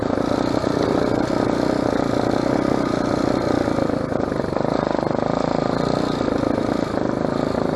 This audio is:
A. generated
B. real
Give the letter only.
B